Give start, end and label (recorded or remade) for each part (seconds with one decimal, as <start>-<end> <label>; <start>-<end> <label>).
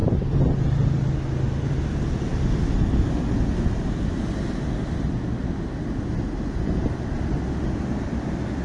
0.0-8.6 recorded